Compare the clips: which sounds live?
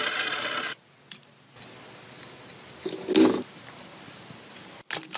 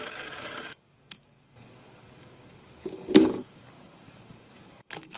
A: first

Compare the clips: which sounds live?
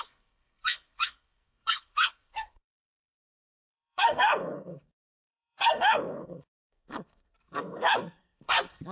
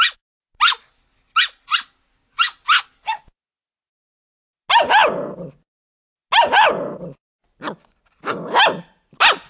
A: second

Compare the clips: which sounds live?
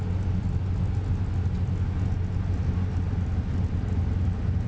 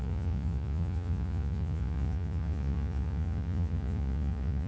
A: first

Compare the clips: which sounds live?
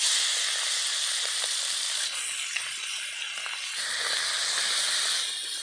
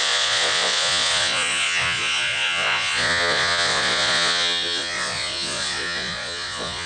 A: first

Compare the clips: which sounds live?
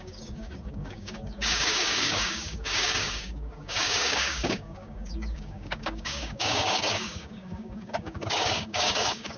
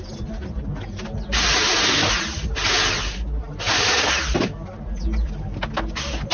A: second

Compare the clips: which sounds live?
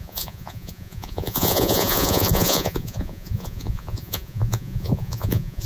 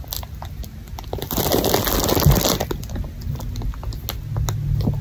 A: second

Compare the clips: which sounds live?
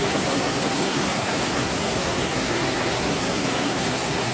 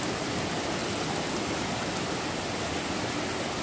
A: second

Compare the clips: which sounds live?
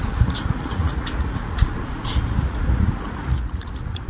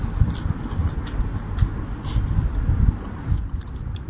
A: second